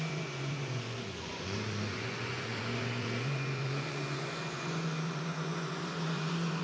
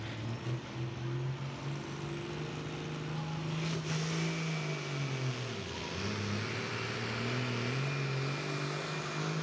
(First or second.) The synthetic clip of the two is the first